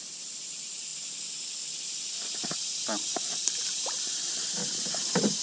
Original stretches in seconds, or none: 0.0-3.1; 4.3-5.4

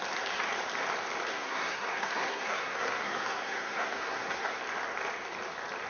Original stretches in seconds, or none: 0.0-1.3; 4.6-5.9

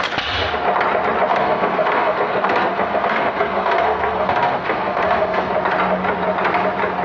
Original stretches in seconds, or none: 0.0-1.3; 5.5-7.0

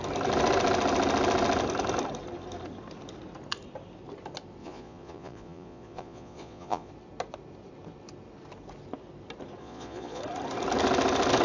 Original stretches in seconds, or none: 0.0-4.6; 6.9-9.6; 10.2-11.4

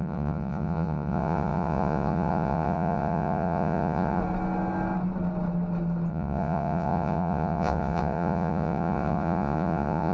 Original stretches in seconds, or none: 4.2-6.1